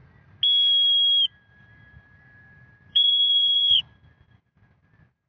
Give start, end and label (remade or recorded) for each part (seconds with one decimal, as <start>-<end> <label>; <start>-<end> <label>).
0.0-2.9 recorded; 2.9-3.8 remade; 3.8-5.3 recorded